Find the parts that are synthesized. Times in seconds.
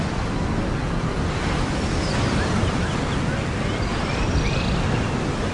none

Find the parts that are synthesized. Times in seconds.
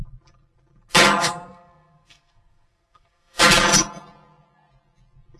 1.2-3.4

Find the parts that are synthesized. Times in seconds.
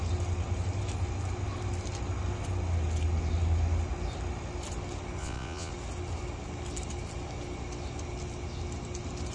5.2-5.7